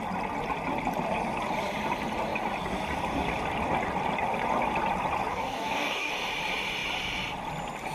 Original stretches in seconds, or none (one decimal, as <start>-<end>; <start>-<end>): 0.0-5.3; 6.1-7.9